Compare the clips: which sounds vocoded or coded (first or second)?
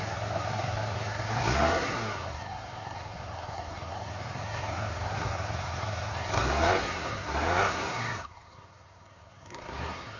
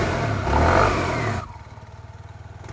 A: first